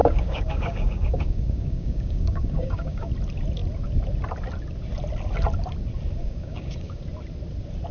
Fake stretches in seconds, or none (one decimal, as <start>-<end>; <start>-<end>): 0.0-3.1; 6.2-7.0

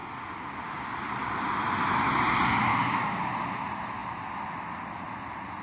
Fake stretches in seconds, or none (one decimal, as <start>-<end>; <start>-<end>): 2.7-3.3

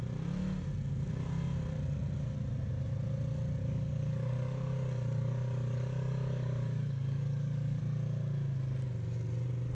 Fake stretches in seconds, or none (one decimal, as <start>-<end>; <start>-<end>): 3.6-7.8

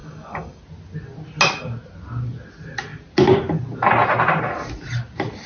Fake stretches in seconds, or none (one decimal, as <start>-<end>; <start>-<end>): 0.0-0.6